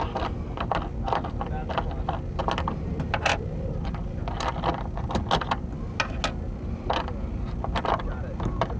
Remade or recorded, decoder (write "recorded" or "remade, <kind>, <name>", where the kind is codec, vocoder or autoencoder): recorded